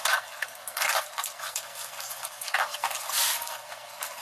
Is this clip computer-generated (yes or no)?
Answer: yes